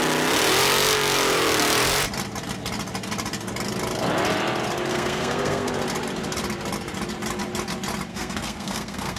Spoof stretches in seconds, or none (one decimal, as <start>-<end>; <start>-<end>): 4.9-5.7; 8.1-9.2